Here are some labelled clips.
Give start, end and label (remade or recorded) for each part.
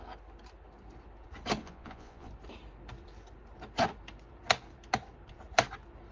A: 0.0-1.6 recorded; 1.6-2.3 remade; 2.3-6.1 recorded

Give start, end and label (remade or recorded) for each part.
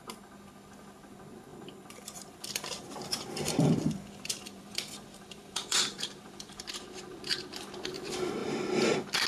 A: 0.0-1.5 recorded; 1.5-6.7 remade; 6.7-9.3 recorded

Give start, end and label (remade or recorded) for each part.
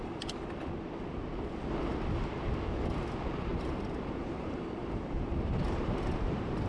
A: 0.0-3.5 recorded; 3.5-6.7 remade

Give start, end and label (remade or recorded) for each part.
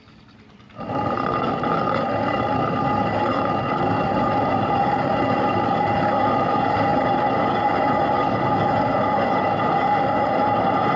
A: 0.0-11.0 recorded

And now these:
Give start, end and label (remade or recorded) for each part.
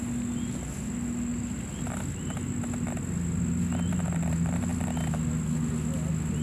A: 0.0-6.4 recorded